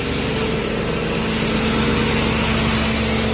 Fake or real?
real